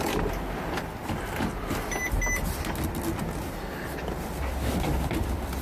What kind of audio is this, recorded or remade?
recorded